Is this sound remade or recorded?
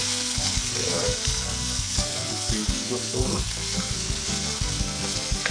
remade